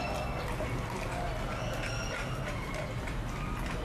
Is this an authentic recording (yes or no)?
yes